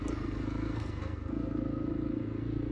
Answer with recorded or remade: remade